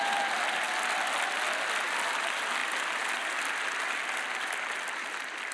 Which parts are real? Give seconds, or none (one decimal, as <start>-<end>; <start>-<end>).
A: 0.0-5.5